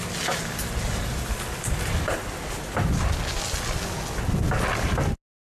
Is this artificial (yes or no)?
no